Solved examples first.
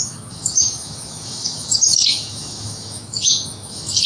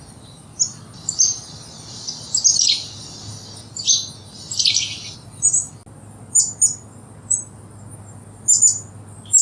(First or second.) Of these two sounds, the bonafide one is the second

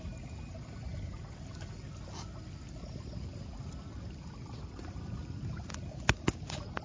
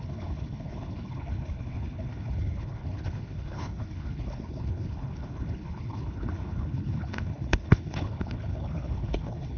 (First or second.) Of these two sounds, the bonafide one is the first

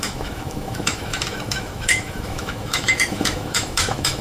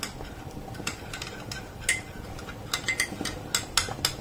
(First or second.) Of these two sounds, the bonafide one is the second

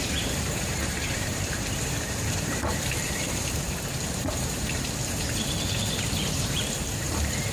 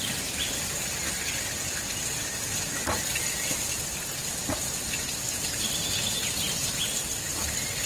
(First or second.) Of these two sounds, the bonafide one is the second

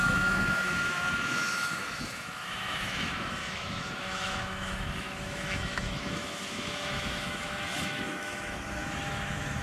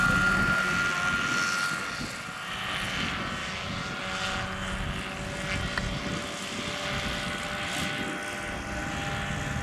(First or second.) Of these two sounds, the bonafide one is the second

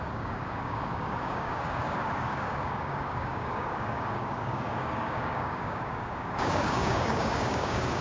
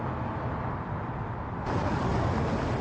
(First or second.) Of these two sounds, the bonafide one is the second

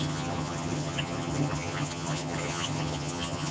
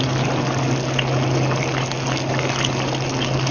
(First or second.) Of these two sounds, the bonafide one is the second